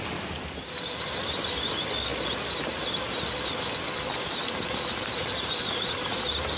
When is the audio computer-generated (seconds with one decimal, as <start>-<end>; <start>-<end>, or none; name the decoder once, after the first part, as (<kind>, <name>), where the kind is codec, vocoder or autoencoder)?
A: none